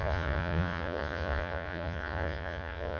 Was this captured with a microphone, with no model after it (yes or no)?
no